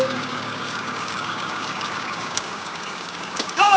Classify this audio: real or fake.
fake